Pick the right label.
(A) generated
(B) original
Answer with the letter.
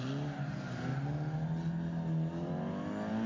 B